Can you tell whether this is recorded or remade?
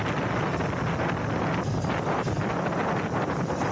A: recorded